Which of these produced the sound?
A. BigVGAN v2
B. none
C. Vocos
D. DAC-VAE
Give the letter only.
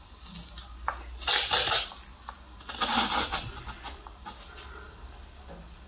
B